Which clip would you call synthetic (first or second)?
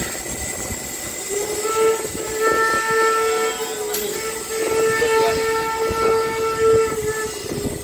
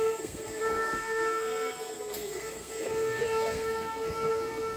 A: second